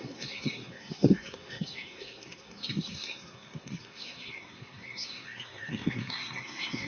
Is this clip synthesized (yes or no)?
yes